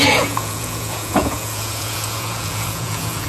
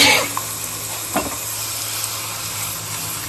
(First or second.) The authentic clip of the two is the second